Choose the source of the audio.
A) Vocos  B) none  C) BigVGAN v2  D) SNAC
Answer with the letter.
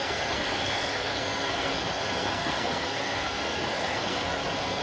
D